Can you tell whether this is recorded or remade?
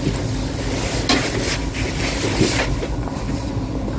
recorded